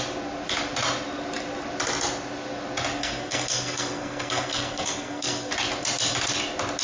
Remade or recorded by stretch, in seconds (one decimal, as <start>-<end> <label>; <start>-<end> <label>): 0.0-3.0 recorded; 3.0-5.5 remade; 5.5-6.8 recorded